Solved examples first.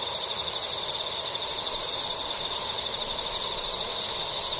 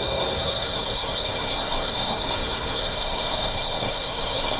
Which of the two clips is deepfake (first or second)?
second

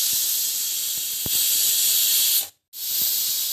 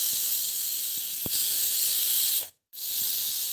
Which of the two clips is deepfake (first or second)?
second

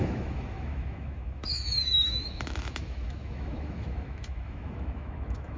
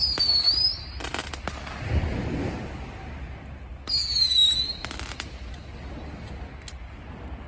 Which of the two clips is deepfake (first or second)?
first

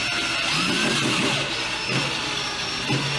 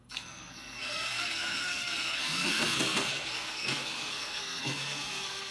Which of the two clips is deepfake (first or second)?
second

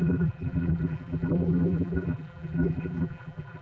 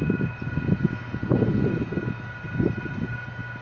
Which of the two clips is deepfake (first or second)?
first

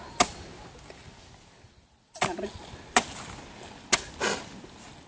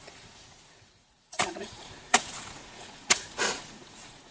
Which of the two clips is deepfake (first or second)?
second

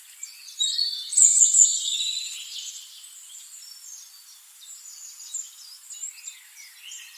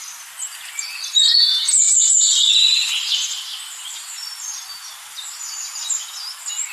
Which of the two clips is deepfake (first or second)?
first